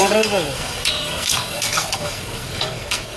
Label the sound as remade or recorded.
remade